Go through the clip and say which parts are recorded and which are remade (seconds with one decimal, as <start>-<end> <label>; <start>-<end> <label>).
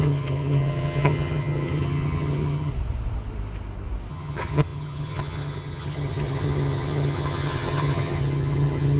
0.0-2.7 remade; 2.7-4.1 recorded; 4.1-9.0 remade